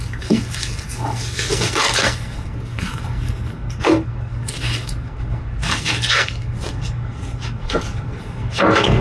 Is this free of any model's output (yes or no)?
no